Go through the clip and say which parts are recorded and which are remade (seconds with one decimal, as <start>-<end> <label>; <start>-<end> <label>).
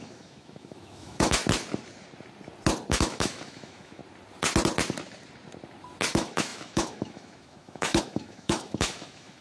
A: 0.0-1.4 remade; 1.4-2.9 recorded; 2.9-4.0 remade; 4.0-6.1 recorded; 6.1-9.4 remade